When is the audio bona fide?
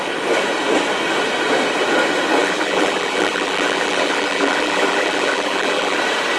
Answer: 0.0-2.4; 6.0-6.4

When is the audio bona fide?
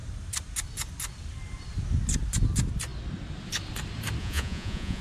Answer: 0.0-4.2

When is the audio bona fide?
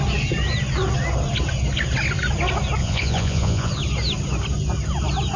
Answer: 0.0-2.8; 3.7-5.4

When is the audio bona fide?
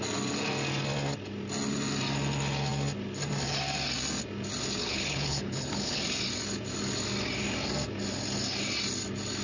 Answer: 0.0-4.8; 6.0-9.4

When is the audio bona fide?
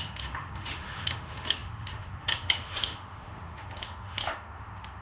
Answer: none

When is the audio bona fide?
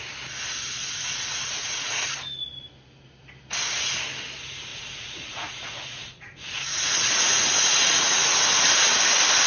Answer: 0.0-0.8; 2.1-4.7; 8.4-9.5